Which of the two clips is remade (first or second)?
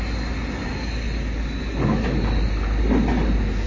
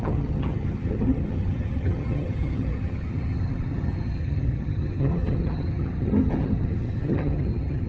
second